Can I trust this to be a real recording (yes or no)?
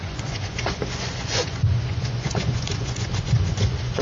no